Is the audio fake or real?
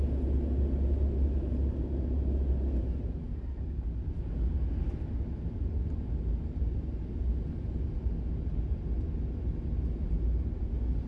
real